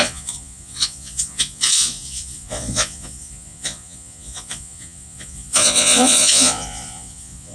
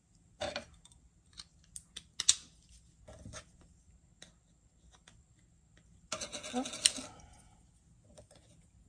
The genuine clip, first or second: second